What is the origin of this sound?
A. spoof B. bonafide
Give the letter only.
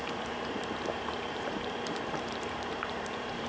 A